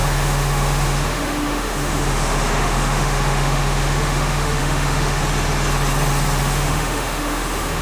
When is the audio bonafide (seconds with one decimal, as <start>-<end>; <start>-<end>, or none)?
5.2-6.4